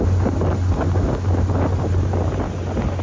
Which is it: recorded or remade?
recorded